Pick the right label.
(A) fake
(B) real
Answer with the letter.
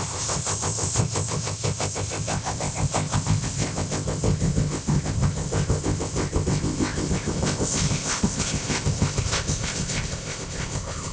A